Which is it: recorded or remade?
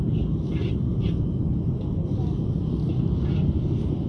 recorded